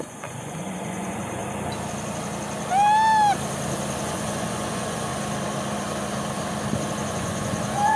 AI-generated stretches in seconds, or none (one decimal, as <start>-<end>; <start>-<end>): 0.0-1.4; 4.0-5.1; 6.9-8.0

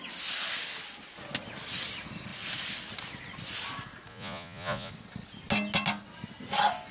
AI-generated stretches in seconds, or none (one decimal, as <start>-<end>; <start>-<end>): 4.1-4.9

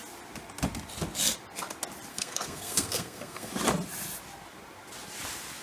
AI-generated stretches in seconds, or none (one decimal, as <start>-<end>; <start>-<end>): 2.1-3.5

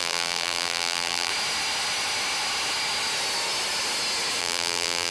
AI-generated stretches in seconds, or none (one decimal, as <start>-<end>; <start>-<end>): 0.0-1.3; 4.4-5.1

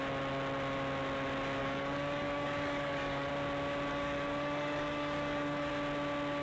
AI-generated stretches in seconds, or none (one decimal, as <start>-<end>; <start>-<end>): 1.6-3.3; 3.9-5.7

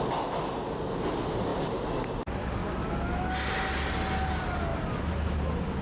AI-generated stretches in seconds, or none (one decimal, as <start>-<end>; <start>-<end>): none